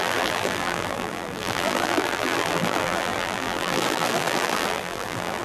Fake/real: fake